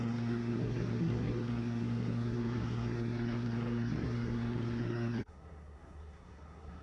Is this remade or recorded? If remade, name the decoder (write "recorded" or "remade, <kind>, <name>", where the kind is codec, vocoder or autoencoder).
remade, codec, SNAC